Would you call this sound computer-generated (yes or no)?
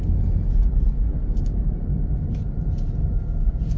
no